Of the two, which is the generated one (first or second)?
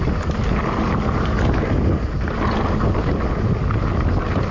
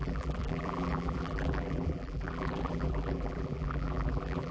second